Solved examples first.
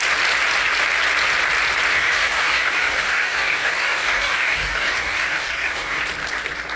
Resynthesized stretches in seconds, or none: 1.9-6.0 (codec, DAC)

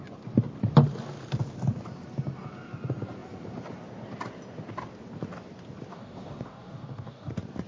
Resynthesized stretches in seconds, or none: 5.9-7.3 (codec, DAC)

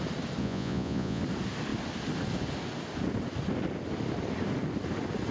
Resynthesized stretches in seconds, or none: 0.4-1.2 (vocoder, Vocos)

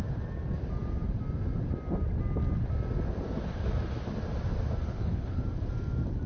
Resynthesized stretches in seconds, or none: 4.8-5.4 (codec, HILCodec)

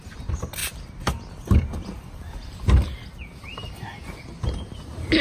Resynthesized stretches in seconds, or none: none

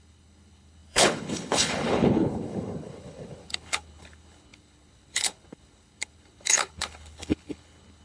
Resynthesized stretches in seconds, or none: 0.0-8.0 (codec, HILCodec)

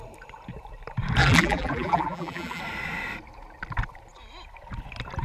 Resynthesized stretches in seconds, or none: 1.2-2.6 (vocoder, BigVGAN v2)